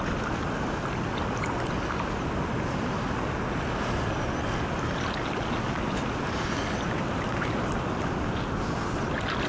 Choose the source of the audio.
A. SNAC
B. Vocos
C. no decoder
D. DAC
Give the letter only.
C